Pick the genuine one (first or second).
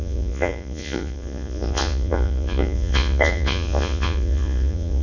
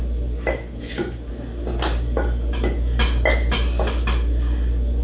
second